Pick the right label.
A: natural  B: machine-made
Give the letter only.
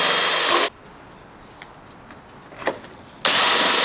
A